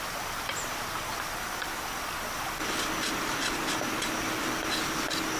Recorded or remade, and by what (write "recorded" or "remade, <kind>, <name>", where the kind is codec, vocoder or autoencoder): recorded